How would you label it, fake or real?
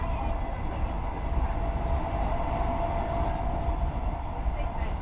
real